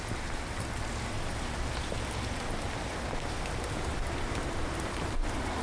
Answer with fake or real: real